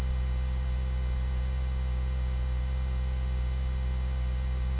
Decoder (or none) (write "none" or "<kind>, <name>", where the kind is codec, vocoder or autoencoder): none